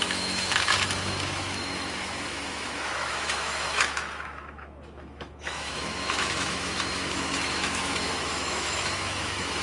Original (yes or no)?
no